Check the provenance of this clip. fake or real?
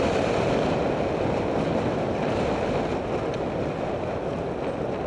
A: real